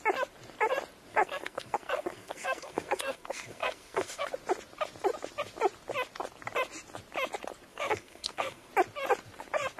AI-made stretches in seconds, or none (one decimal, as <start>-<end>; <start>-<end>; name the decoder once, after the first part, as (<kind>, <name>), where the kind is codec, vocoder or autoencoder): 1.1-4.3 (codec, SNAC); 7.7-8.7